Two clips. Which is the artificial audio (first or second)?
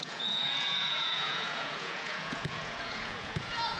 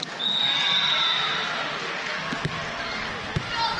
first